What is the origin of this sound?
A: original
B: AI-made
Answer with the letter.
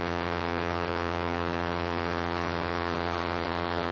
B